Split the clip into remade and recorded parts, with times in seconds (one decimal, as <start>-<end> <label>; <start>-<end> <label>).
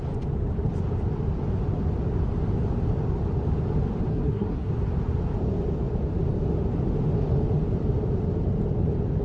0.0-4.1 recorded; 4.1-4.7 remade; 4.7-9.2 recorded